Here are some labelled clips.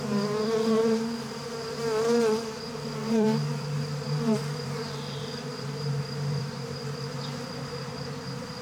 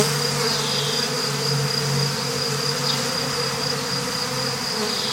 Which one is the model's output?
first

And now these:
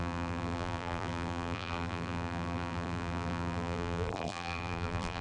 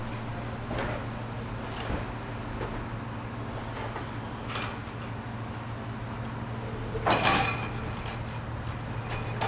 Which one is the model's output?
first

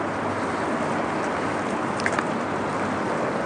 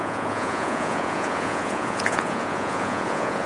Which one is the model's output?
second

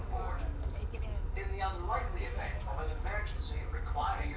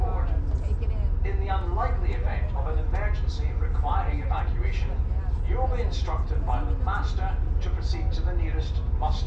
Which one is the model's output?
first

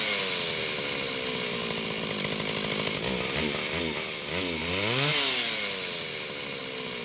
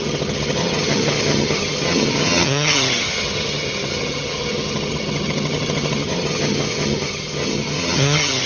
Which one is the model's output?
second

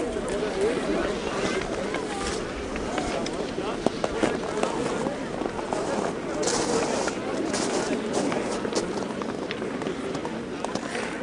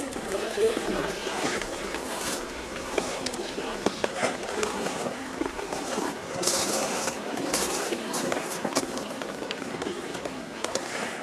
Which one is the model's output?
second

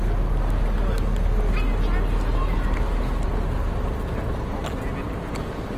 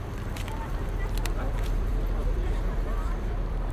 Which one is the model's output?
second